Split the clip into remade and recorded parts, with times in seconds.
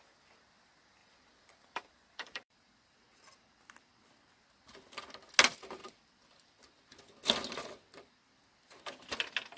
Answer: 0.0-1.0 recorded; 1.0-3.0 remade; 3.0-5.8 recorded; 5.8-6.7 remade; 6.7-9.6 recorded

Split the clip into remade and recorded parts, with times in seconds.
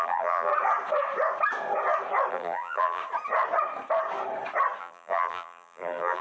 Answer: 0.0-0.5 remade; 0.5-2.3 recorded; 2.3-3.0 remade; 3.0-4.8 recorded; 4.8-6.2 remade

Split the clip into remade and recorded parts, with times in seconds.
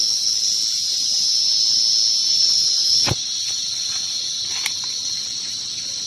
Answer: 0.0-2.2 recorded; 2.2-6.1 remade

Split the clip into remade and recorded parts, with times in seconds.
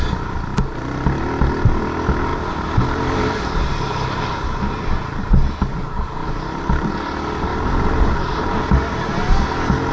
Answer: 0.0-2.3 recorded; 2.3-4.2 remade; 4.2-6.2 recorded; 6.2-6.9 remade; 6.9-7.5 recorded; 7.5-8.6 remade; 8.6-9.9 recorded